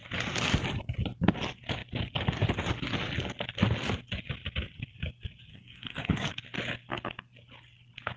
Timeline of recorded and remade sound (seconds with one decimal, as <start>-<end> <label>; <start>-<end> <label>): 0.0-5.5 recorded; 5.5-6.3 remade; 6.3-8.2 recorded